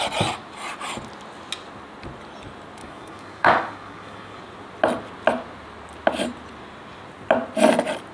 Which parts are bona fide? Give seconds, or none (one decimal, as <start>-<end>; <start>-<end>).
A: 0.0-2.8; 4.4-8.1